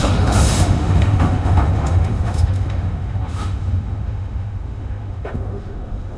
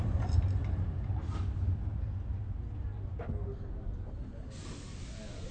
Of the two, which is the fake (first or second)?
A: first